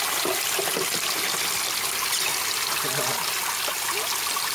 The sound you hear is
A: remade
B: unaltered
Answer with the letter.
B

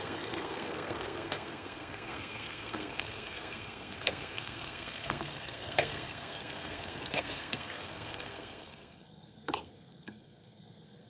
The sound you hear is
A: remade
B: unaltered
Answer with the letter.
A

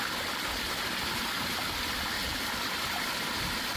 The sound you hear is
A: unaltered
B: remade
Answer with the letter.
A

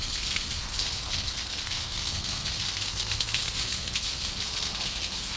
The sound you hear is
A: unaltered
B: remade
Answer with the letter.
B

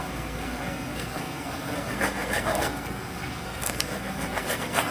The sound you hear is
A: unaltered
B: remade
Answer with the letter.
B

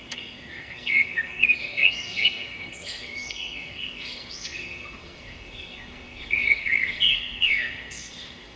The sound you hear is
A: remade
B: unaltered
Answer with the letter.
A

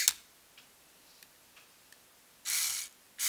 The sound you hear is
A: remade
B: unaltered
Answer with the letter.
B